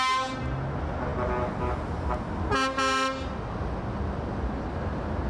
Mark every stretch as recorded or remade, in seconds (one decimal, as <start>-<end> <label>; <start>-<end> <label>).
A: 0.0-5.3 recorded